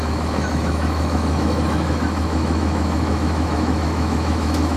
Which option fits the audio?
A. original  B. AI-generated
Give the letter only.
B